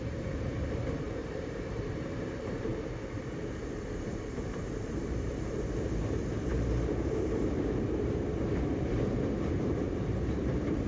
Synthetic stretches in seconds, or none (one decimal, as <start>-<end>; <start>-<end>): 0.0-2.7; 3.2-10.9